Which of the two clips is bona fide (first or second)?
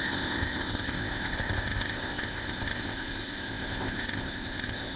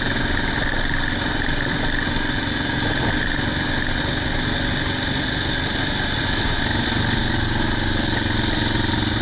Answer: second